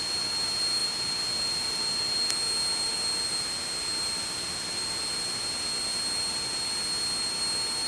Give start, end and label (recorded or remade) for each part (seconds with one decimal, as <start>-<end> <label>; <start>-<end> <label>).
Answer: 0.0-7.9 recorded